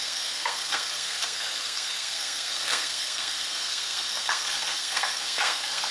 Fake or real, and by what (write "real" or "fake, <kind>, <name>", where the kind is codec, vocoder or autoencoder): fake, codec, SNAC